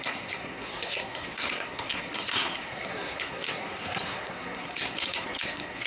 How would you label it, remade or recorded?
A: remade